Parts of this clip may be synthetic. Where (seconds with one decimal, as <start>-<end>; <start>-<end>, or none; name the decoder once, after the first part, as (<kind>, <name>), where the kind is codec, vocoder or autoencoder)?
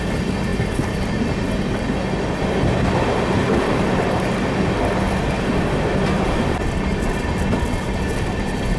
none